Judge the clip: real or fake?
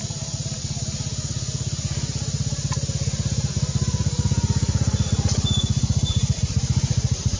real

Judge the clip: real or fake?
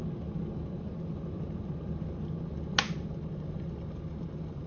real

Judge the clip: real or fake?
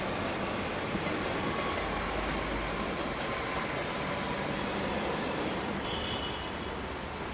real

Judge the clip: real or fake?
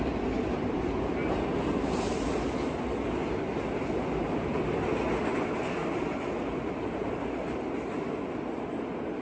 real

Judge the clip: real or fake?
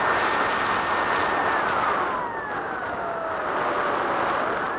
real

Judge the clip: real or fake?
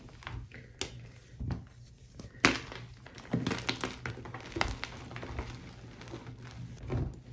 real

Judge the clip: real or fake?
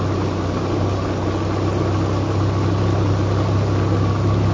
real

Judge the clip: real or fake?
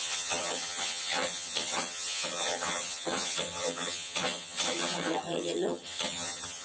fake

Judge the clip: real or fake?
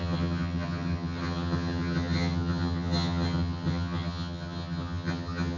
fake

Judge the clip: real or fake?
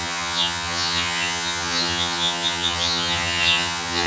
fake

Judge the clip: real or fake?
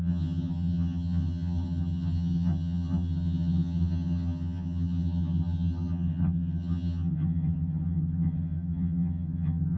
fake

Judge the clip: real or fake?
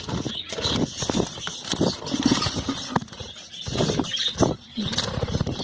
real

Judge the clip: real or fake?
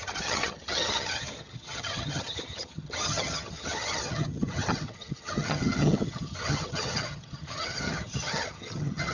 fake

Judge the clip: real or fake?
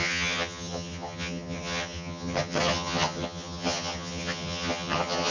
fake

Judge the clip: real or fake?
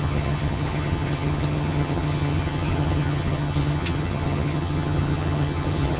fake